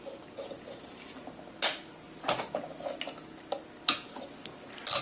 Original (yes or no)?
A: yes